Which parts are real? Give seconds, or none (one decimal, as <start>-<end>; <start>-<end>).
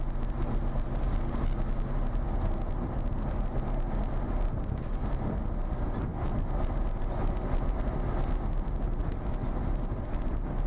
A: 0.0-10.7